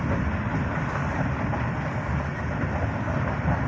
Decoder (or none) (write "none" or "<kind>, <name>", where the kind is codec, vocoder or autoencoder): none